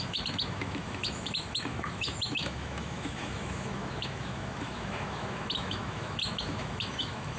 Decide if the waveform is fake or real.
fake